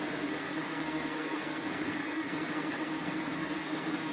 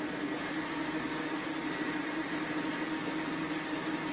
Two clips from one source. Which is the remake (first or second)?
first